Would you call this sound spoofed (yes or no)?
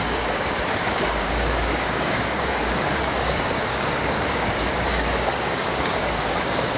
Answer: yes